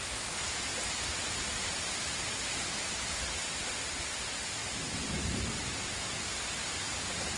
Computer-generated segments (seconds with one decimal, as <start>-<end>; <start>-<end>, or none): none